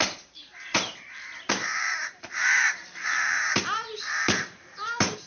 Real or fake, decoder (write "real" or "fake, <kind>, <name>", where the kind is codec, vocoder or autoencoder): fake, vocoder, BigVGAN v2